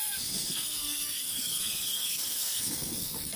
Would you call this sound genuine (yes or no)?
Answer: no